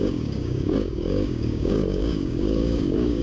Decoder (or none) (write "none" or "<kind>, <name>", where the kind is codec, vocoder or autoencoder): codec, DAC